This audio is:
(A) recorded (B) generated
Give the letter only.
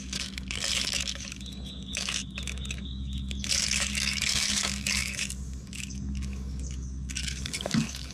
B